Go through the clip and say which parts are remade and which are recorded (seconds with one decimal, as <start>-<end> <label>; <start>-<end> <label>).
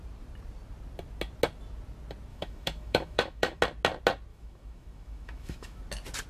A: 0.0-2.3 recorded; 2.3-3.6 remade; 3.6-4.3 recorded; 4.3-5.8 remade; 5.8-6.3 recorded